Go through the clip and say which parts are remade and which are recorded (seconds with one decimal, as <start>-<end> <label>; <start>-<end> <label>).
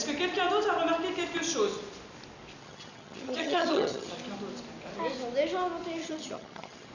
0.0-2.6 recorded; 2.6-4.1 remade; 4.1-6.0 recorded; 6.0-6.9 remade